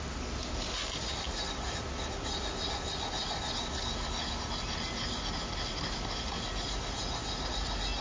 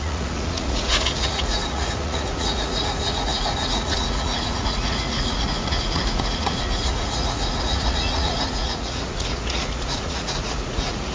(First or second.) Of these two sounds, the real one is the first